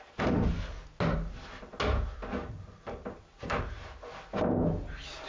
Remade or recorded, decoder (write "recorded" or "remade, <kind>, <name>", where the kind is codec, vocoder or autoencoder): recorded